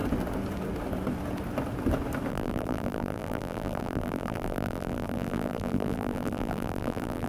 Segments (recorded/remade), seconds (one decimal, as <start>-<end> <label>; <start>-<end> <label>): 0.0-2.3 recorded; 2.3-7.3 remade